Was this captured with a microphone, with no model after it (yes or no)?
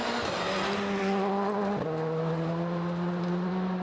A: yes